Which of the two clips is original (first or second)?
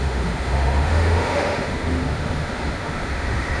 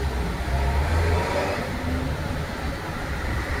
second